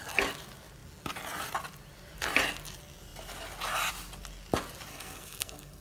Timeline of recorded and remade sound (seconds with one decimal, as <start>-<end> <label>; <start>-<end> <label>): 0.0-4.9 recorded; 4.9-5.8 remade

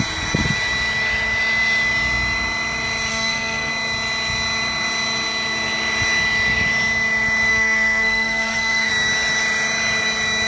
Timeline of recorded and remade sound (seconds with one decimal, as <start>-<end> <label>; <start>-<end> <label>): 0.0-3.1 recorded; 3.1-3.7 remade; 3.7-7.5 recorded; 7.5-8.9 remade; 8.9-10.5 recorded

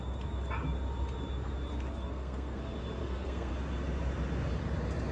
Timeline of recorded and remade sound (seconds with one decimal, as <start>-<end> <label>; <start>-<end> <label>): 0.0-2.0 recorded; 2.0-2.6 remade; 2.6-3.0 recorded; 3.0-3.5 remade; 3.5-5.1 recorded

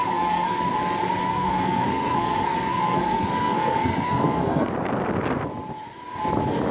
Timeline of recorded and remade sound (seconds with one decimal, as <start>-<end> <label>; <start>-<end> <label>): 0.0-0.6 remade; 0.6-1.3 recorded; 1.3-4.7 remade; 4.7-6.7 recorded

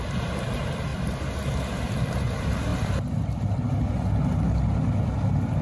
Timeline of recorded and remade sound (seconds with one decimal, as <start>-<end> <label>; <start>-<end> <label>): 0.0-5.6 recorded